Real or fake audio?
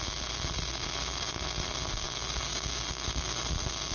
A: real